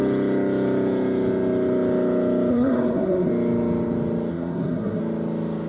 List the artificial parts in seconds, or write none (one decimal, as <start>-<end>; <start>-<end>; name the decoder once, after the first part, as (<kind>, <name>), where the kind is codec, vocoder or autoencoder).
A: 2.5-3.3 (codec, SNAC); 4.3-5.0